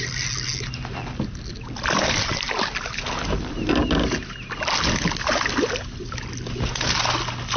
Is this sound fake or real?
real